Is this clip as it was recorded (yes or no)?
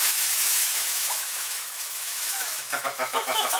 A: no